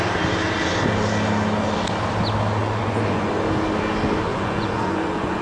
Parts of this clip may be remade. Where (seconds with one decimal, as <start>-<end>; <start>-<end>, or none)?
2.6-3.3; 4.3-5.4